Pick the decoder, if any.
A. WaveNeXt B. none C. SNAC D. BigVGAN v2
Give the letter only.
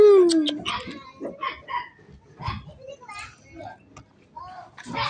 B